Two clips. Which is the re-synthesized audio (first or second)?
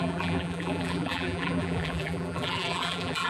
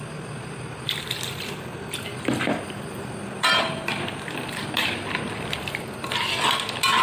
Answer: first